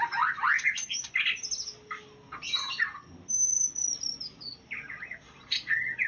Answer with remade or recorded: recorded